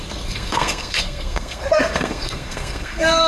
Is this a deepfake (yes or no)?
yes